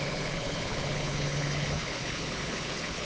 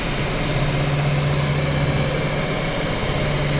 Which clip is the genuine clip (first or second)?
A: second